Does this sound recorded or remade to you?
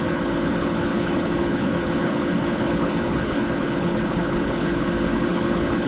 remade